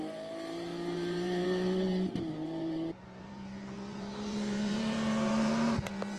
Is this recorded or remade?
remade